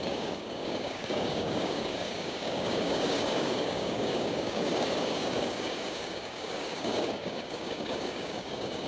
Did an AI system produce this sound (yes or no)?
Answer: yes